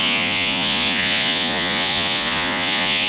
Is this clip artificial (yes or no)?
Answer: yes